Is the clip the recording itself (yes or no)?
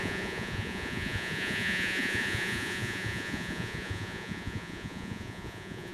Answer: no